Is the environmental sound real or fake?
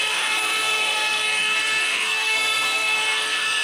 fake